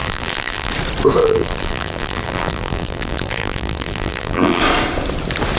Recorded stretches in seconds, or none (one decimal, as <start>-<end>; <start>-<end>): 0.7-1.2; 4.6-5.6